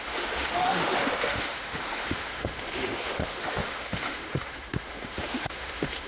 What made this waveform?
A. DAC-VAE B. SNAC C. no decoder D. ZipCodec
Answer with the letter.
A